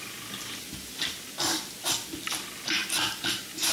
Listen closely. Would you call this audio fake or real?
real